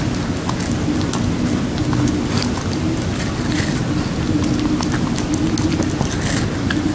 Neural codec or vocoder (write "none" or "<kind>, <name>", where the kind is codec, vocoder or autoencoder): none